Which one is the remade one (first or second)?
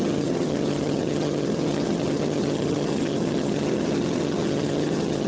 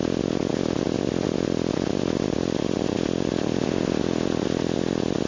first